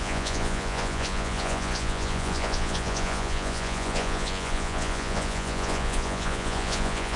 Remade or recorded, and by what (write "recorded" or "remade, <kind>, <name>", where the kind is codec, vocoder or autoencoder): remade, vocoder, Vocos